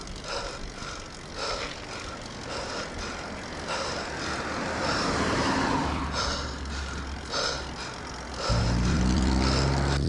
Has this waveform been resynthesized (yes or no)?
no